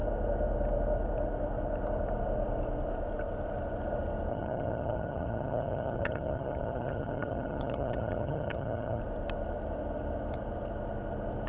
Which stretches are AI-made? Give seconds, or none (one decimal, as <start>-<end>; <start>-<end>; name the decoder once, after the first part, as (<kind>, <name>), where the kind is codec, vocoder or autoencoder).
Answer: 4.3-9.0 (vocoder, HiFi-GAN)